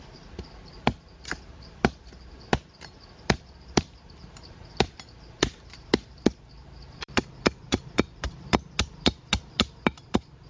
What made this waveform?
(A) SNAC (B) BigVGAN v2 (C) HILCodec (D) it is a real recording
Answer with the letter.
B